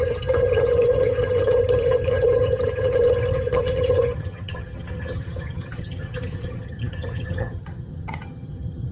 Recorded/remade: remade